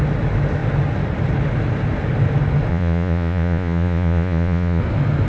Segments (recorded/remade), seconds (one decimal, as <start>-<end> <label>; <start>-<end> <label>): 0.0-2.7 recorded; 2.7-4.8 remade; 4.8-5.3 recorded